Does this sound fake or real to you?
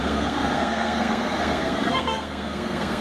fake